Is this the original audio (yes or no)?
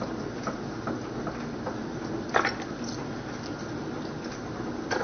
yes